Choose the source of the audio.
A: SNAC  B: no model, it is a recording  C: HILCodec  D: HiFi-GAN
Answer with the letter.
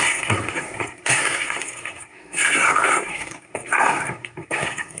A